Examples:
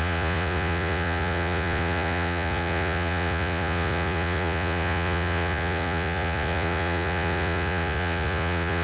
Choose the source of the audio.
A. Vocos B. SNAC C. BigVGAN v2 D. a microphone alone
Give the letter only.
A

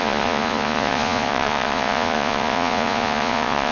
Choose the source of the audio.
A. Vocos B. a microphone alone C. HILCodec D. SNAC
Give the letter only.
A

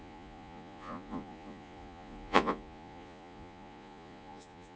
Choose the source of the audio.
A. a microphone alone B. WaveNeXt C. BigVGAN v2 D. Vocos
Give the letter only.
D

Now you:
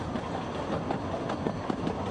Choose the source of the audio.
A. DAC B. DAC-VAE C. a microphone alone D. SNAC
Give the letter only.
C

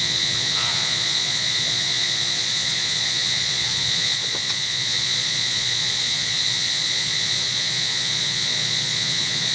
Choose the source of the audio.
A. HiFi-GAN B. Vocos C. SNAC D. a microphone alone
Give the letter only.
B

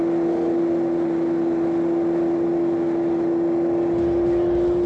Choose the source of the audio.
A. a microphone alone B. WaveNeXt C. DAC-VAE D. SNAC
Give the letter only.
A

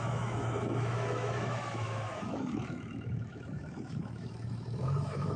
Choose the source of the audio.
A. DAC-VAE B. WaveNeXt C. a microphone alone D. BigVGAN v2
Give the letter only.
A